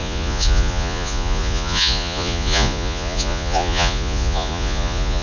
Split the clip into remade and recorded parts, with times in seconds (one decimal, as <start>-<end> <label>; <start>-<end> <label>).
0.0-5.2 remade